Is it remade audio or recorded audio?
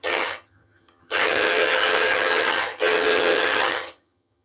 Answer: remade